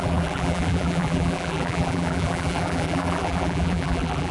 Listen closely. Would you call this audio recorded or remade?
remade